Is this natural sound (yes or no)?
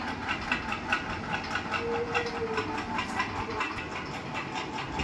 yes